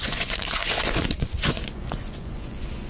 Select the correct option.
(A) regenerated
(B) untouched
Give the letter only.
A